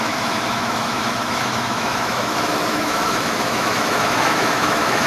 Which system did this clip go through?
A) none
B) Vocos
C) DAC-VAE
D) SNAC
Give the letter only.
C